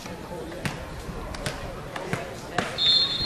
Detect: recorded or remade recorded